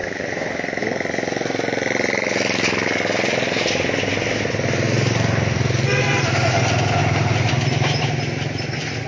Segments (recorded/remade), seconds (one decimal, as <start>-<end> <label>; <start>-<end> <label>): 0.0-0.8 remade; 0.8-7.0 recorded; 7.0-7.5 remade; 7.5-9.1 recorded